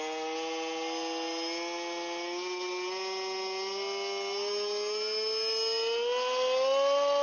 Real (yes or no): yes